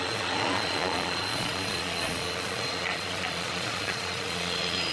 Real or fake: fake